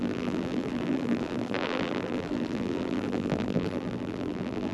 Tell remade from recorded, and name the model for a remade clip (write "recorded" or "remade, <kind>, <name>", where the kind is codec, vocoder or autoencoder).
remade, vocoder, BigVGAN v2